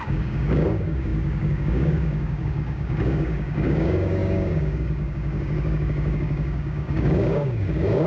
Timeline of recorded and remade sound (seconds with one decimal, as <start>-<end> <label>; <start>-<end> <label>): 0.0-8.1 remade